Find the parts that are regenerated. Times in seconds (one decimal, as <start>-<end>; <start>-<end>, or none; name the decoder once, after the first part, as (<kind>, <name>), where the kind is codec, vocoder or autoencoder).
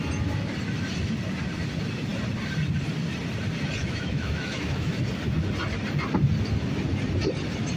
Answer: 3.8-5.0 (autoencoder, DAC-VAE)